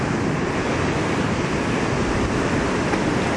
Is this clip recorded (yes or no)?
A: yes